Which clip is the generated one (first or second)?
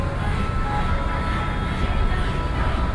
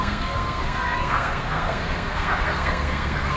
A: second